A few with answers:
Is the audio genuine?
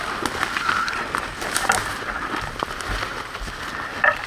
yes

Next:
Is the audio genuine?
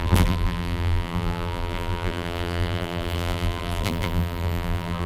no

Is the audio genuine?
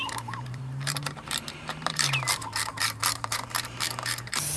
no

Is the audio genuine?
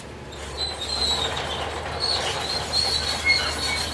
yes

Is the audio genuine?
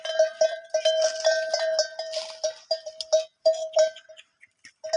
yes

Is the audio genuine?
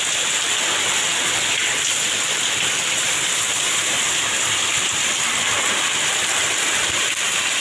no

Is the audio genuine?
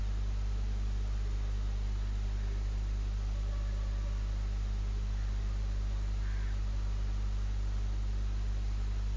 yes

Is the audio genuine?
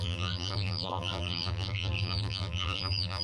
no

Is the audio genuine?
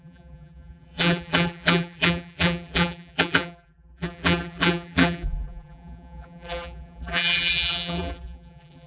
no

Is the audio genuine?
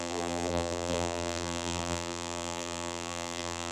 no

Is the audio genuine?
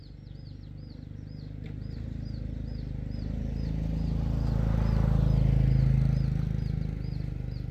yes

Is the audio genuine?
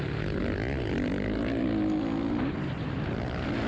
yes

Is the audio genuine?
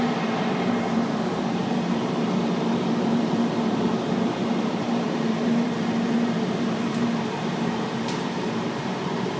no